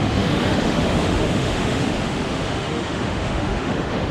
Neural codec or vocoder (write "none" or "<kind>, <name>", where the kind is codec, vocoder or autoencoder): autoencoder, DAC-VAE